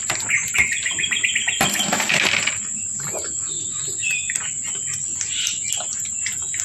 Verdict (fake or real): real